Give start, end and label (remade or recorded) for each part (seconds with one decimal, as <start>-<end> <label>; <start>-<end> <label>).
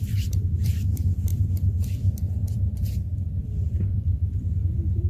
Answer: 0.0-5.1 remade